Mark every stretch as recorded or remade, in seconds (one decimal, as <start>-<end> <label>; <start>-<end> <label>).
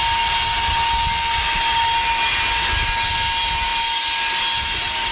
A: 0.0-5.1 recorded